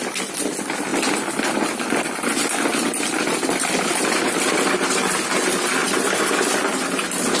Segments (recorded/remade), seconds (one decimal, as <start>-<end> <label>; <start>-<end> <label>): 0.0-7.4 recorded

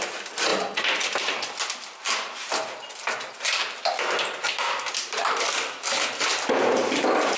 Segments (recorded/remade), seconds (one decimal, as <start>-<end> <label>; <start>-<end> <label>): 0.0-7.4 recorded

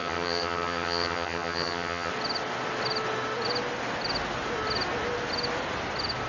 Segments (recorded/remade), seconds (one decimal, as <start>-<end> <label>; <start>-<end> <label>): 0.0-2.1 remade; 2.1-6.3 recorded

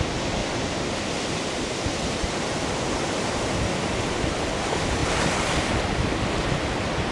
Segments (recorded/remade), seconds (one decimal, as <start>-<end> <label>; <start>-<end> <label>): 0.0-0.4 recorded; 0.4-3.4 remade; 3.4-7.1 recorded